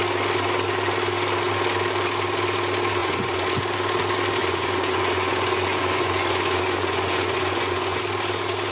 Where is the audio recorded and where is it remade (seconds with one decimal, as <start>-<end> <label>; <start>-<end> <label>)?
0.0-3.0 recorded; 3.0-3.6 remade; 3.6-4.4 recorded; 4.4-8.0 remade; 8.0-8.7 recorded